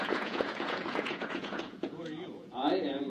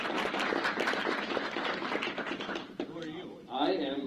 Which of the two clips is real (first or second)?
second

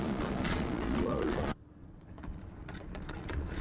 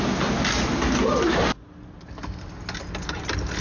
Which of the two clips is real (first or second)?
second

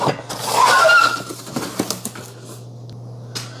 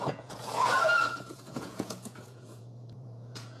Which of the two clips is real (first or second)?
first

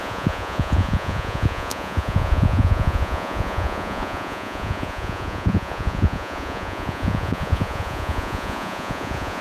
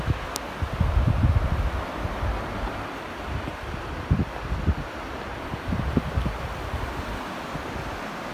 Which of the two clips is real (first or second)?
second